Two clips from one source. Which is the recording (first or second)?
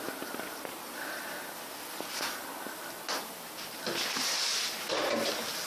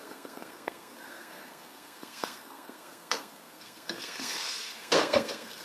first